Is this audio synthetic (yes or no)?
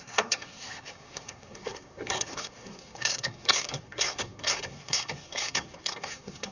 yes